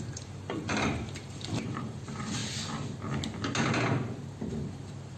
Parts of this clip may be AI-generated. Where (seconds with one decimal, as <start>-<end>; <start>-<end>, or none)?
0.0-2.4; 4.5-5.2